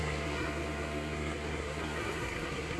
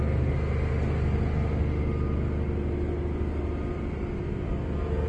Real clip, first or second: second